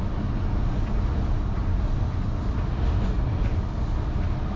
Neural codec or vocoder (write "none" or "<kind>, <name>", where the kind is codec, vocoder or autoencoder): none